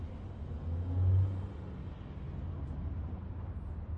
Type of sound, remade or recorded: recorded